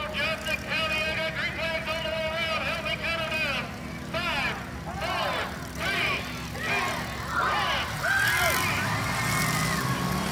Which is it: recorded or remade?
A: recorded